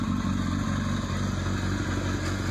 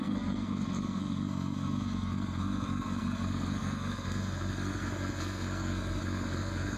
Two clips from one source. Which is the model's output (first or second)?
second